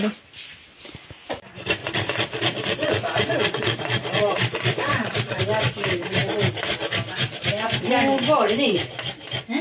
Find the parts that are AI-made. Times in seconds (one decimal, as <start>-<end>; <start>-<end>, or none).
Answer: 1.8-5.4